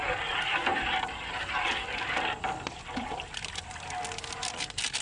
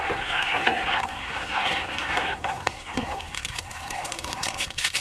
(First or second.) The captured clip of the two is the first